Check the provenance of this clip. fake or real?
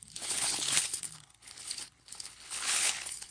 fake